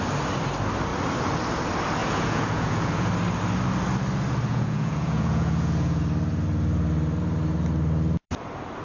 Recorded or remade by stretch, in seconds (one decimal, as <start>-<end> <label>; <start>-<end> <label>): 0.0-2.0 recorded; 2.0-3.1 remade; 3.1-4.5 recorded; 4.5-6.0 remade; 6.0-8.8 recorded